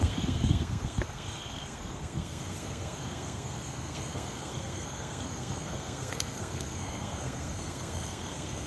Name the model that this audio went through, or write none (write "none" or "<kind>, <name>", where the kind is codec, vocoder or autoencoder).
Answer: codec, SNAC